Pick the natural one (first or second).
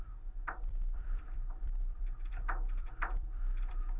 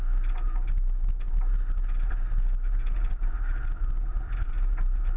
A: second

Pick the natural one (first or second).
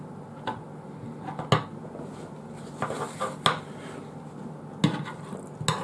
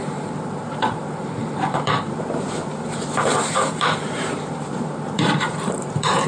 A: first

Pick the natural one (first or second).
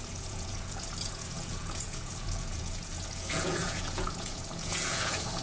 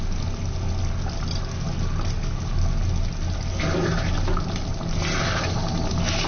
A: second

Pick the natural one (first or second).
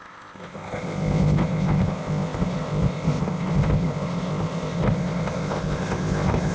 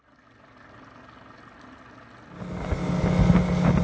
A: second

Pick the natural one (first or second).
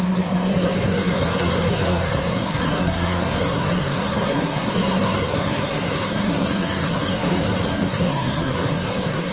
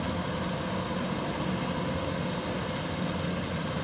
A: second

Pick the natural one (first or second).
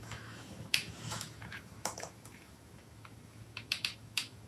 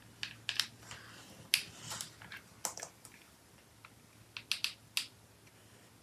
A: second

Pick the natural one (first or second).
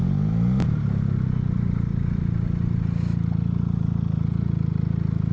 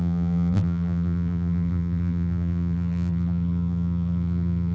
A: first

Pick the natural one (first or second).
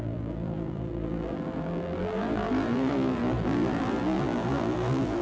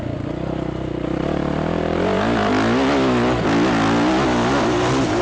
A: second